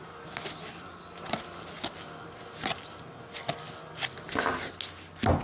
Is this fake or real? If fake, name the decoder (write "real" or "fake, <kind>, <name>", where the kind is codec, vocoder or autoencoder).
real